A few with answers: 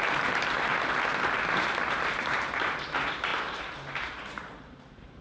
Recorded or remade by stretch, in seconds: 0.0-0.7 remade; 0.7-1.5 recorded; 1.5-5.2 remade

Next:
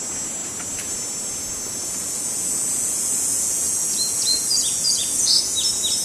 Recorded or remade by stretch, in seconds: 0.0-1.8 recorded; 1.8-5.4 remade; 5.4-6.0 recorded

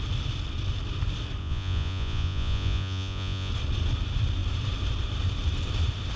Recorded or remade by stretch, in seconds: 0.0-1.4 recorded; 1.4-3.5 remade; 3.5-6.2 recorded

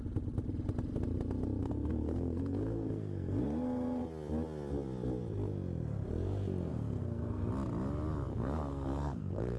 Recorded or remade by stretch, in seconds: 0.0-1.6 recorded; 1.6-4.0 remade; 4.0-6.7 recorded; 6.7-7.5 remade; 7.5-8.3 recorded; 8.3-9.6 remade

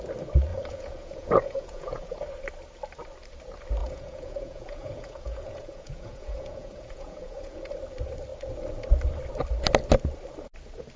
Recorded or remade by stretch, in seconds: 0.0-0.5 recorded; 0.5-2.2 remade; 2.2-3.8 recorded; 3.8-7.7 remade; 7.7-11.0 recorded

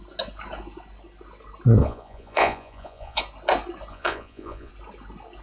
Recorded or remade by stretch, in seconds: 0.0-1.8 recorded; 1.8-3.2 remade; 3.2-3.9 recorded; 3.9-4.7 remade; 4.7-5.4 recorded